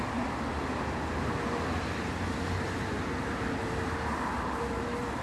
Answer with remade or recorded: recorded